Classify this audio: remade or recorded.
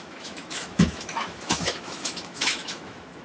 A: remade